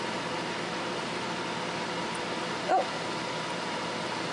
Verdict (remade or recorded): recorded